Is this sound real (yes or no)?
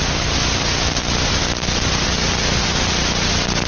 yes